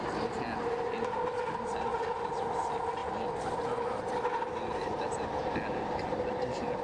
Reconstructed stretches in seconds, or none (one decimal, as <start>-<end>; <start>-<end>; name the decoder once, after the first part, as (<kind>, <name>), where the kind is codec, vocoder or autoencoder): none